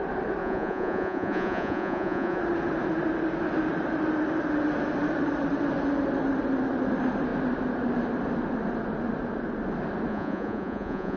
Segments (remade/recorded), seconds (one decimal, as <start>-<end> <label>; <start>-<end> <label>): 0.0-0.4 recorded; 0.4-2.4 remade; 2.4-10.1 recorded; 10.1-11.2 remade